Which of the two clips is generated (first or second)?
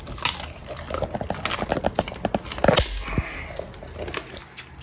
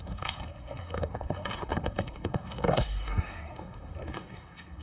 second